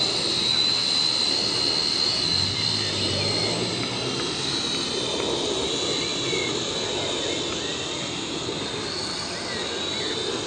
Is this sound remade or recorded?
recorded